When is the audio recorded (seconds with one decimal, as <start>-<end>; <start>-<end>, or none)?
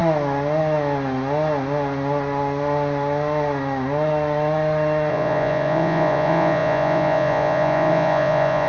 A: 0.0-5.1